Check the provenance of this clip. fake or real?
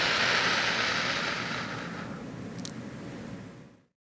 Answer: real